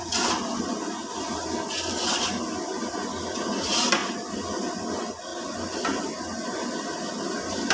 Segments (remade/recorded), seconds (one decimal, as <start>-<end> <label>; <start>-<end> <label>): 0.0-7.7 recorded